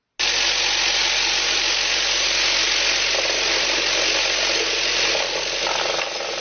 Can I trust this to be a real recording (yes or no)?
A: yes